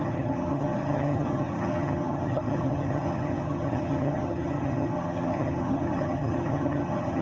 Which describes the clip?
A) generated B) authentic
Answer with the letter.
A